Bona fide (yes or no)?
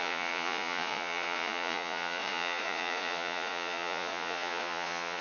no